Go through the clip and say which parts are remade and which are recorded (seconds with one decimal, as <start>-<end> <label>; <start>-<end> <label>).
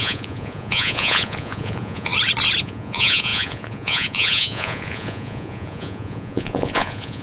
0.0-2.1 remade; 2.1-2.6 recorded; 2.6-7.2 remade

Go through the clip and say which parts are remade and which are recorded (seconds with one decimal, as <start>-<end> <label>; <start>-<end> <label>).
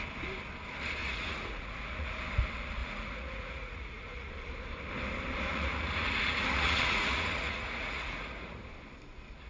0.0-1.0 recorded; 1.0-2.2 remade; 2.2-2.8 recorded; 2.8-4.3 remade; 4.3-5.5 recorded; 5.5-8.6 remade; 8.6-9.5 recorded